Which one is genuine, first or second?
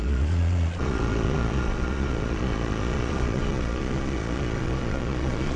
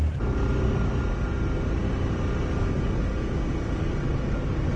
second